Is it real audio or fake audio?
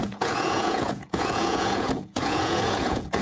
fake